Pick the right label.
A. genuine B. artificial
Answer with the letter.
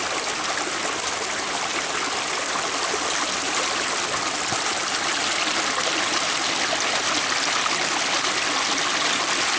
A